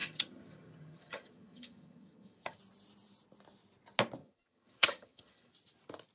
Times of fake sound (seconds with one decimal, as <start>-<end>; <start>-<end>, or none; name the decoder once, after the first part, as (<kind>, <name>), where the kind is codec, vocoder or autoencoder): 0.0-2.6 (vocoder, HiFi-GAN); 4.2-5.5